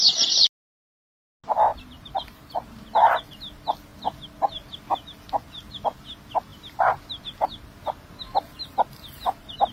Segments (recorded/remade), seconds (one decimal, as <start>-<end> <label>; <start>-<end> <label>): 0.0-1.7 recorded; 1.7-2.6 remade; 2.6-6.5 recorded; 6.5-7.2 remade; 7.2-9.7 recorded

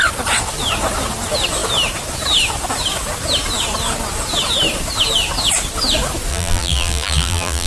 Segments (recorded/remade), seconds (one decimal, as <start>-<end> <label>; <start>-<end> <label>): 0.0-6.3 recorded; 6.3-7.7 remade